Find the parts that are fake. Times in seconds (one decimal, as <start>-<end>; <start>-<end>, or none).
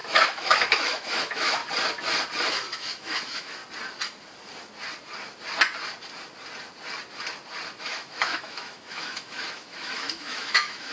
0.0-1.6; 2.5-3.6; 7.8-10.9